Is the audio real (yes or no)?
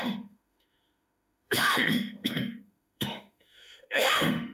no